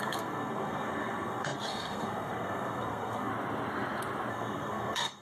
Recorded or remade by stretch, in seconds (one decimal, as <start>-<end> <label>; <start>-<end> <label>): 0.0-3.3 remade; 3.3-4.3 recorded; 4.3-5.2 remade